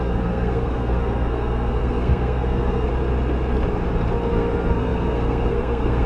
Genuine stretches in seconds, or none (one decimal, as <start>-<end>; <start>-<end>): 2.9-4.3